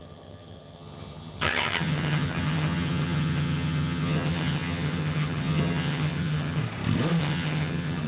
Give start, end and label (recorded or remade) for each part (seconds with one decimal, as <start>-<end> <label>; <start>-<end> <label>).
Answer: 0.0-6.6 remade; 6.6-7.2 recorded; 7.2-8.1 remade